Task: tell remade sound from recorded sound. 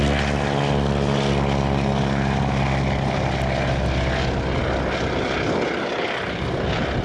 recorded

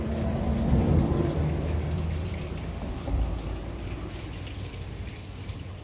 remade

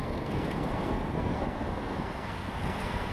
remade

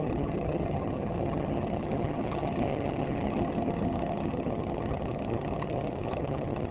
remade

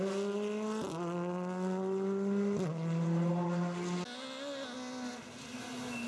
recorded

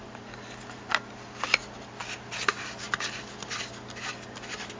recorded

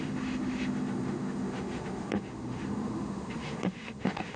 remade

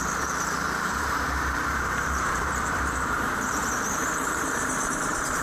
remade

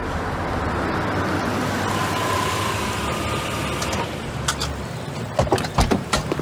recorded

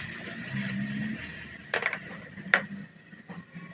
recorded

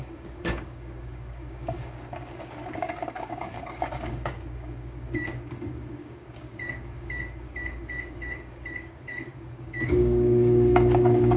remade